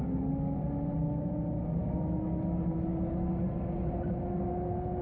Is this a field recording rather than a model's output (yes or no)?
yes